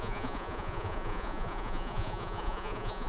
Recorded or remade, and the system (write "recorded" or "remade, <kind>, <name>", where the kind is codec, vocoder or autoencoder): remade, vocoder, Vocos